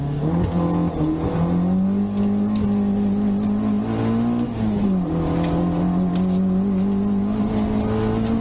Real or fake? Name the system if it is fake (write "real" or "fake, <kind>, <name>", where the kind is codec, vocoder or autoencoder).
real